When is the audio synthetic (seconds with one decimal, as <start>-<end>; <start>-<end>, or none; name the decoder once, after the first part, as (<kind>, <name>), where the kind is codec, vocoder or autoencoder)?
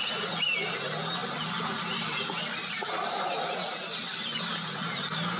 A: none